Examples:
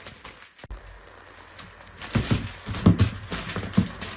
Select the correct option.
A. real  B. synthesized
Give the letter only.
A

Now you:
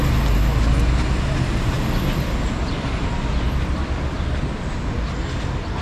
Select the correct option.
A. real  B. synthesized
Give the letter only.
A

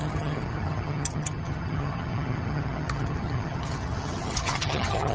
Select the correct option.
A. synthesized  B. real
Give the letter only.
A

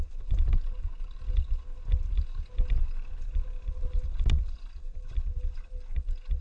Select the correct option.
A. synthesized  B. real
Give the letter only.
B